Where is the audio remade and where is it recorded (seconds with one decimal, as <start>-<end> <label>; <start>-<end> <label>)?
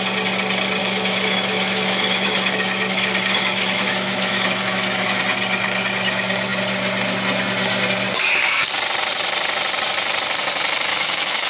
0.0-0.8 recorded; 0.8-5.2 remade; 5.2-10.9 recorded; 10.9-11.5 remade